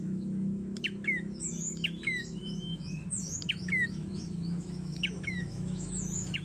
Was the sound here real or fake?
fake